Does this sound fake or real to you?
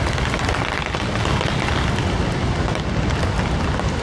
real